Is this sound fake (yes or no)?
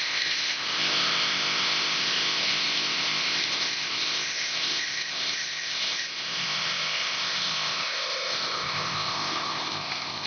yes